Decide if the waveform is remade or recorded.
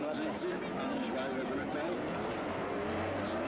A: recorded